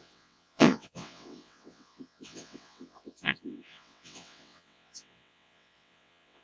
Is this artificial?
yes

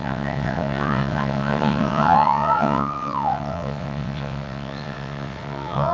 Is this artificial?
yes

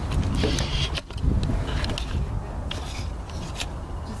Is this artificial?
no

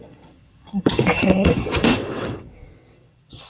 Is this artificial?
yes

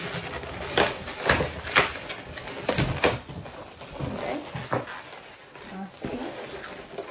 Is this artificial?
no